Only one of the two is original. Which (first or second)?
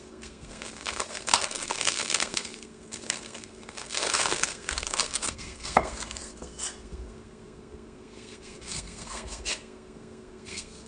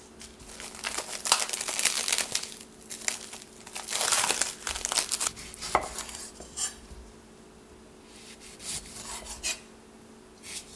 second